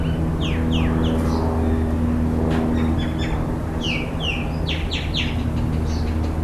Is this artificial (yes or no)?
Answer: no